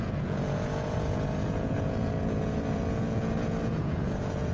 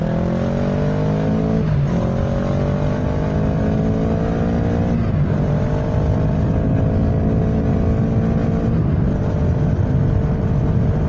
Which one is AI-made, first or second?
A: first